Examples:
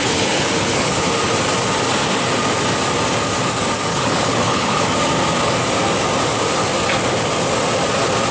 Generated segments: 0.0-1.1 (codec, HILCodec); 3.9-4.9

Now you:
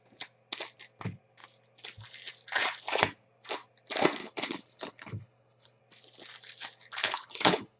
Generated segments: 4.2-5.8 (codec, HILCodec); 7.0-7.8

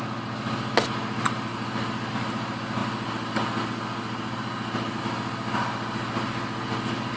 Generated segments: none

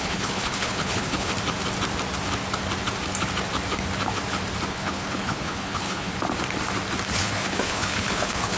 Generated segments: 0.0-1.3 (codec, HILCodec); 4.7-6.1; 7.1-8.6

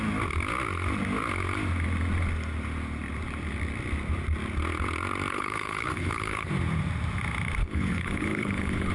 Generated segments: 5.3-6.5 (codec, HILCodec); 7.6-8.9

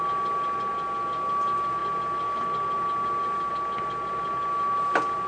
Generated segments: none